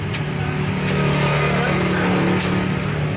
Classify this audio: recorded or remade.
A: recorded